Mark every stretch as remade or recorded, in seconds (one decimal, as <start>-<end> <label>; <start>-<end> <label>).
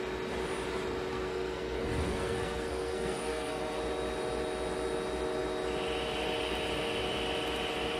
0.0-1.1 recorded; 1.1-3.8 remade; 3.8-8.0 recorded